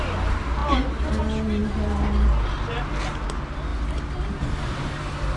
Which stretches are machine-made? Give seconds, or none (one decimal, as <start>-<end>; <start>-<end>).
none